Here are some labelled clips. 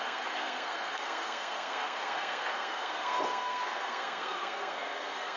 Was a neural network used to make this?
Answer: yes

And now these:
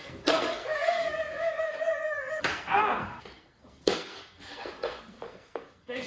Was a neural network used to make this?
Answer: yes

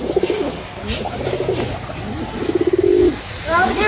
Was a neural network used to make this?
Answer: no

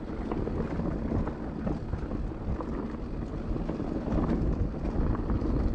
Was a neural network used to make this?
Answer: no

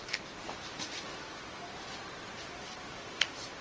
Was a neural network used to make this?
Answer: no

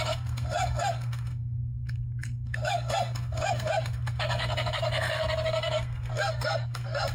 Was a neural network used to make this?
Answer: yes